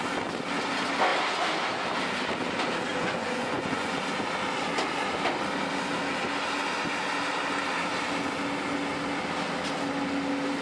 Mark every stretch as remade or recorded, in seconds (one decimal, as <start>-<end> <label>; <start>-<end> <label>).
0.0-2.9 recorded; 2.9-4.0 remade; 4.0-10.6 recorded

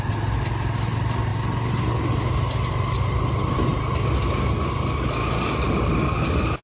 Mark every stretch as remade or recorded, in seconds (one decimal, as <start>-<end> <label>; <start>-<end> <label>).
0.0-6.6 recorded